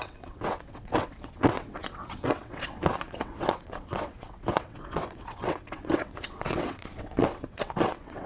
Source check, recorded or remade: remade